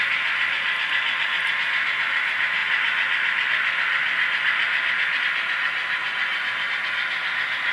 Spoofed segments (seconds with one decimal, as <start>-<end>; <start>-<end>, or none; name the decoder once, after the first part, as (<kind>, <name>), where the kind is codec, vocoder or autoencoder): 6.0-6.7 (vocoder, Vocos)